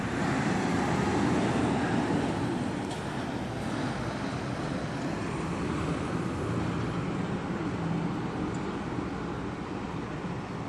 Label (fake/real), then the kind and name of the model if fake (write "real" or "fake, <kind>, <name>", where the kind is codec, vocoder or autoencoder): fake, vocoder, BigVGAN v2